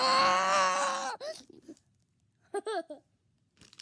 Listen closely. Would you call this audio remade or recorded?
recorded